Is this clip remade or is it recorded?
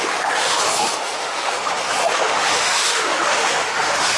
remade